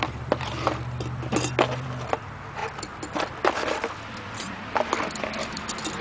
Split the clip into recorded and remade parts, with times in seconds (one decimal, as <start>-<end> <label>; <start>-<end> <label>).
0.0-6.0 remade